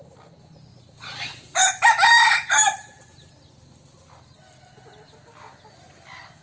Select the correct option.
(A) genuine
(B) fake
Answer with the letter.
A